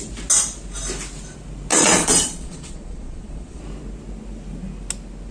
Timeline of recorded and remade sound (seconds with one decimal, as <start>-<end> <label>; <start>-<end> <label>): 0.0-1.7 recorded; 1.7-3.6 remade; 3.6-5.3 recorded